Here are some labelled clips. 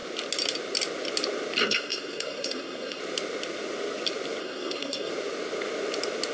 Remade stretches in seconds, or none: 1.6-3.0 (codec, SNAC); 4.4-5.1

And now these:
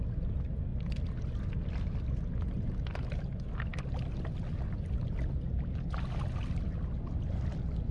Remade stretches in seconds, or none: none

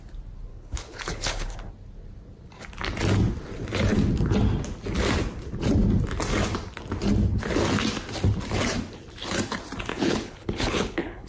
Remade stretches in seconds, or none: 0.5-1.5 (codec, HILCodec); 9.9-11.3

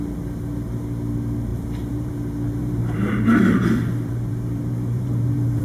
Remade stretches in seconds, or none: 1.5-2.1 (vocoder, BigVGAN v2); 2.6-5.6

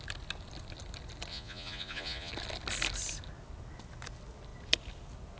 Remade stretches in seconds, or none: 1.3-2.3 (vocoder, Vocos)

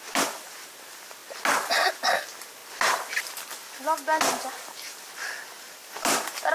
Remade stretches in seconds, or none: none